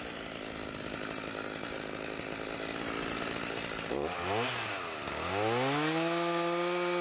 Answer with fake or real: real